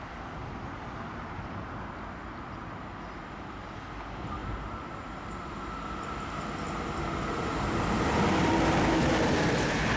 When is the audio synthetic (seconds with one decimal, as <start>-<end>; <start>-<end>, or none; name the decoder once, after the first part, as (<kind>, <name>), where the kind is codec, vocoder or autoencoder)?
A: none